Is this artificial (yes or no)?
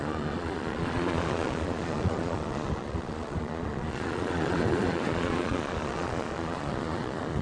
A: yes